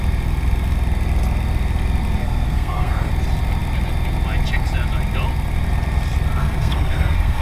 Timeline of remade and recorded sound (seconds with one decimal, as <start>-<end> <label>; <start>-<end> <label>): 0.0-2.2 recorded; 2.2-3.1 remade; 3.1-6.4 recorded; 6.4-7.4 remade